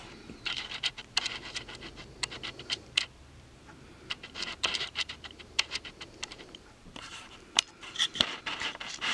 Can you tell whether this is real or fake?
fake